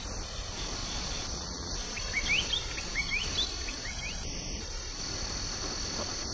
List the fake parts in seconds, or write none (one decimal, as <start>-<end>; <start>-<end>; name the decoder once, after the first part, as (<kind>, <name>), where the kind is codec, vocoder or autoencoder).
0.8-1.7 (vocoder, Vocos)